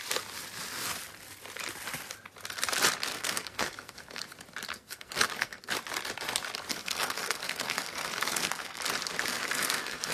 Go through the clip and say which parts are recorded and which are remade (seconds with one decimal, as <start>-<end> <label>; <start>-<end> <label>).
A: 0.0-3.1 recorded; 3.1-4.2 remade; 4.2-4.7 recorded; 4.7-5.7 remade; 5.7-6.7 recorded; 6.7-8.8 remade; 8.8-9.3 recorded; 9.3-10.1 remade